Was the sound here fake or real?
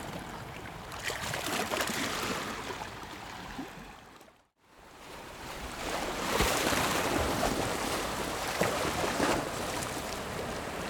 fake